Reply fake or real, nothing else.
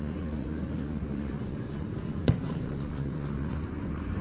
fake